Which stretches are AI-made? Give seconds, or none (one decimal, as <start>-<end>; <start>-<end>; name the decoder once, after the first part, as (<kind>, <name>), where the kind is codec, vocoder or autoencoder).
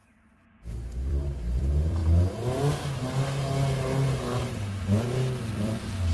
1.0-2.0 (vocoder, BigVGAN v2); 5.4-6.1